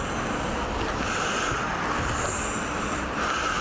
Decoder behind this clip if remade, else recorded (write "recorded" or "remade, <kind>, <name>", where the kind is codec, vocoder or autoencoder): recorded